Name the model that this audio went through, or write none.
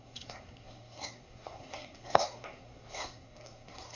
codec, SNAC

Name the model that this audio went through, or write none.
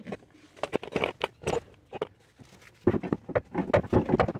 none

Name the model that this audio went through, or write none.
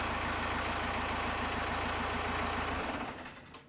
none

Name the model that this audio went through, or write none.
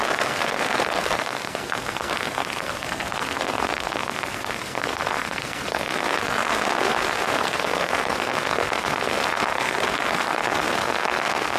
codec, SNAC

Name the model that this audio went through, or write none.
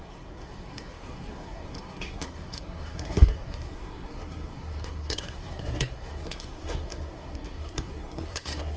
codec, SNAC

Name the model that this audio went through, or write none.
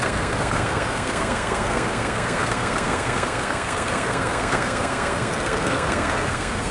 codec, SNAC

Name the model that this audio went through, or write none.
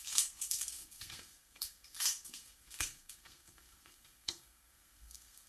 codec, SNAC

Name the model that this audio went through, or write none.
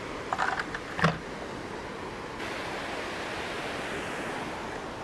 none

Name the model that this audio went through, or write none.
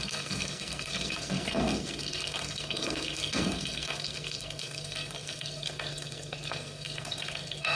codec, SNAC